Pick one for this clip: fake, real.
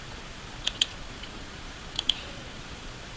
fake